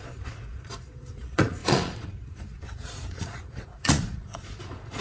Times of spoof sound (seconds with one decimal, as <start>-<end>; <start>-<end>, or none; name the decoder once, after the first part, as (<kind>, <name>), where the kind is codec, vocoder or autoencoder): 0.0-5.0 (vocoder, Vocos)